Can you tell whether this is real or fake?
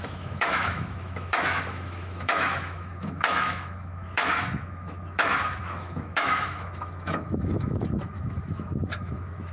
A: fake